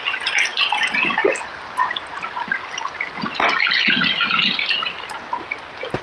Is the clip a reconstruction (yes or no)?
no